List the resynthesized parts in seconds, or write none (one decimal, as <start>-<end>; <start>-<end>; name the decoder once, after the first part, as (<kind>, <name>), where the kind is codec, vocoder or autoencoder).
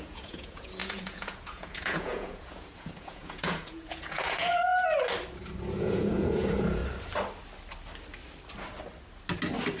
0.0-4.7 (vocoder, Vocos); 5.8-6.8